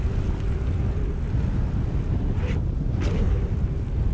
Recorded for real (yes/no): yes